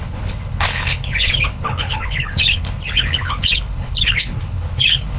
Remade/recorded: remade